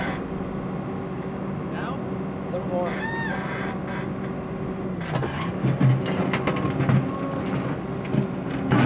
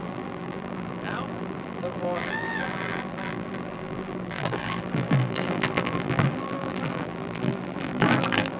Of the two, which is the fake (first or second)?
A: second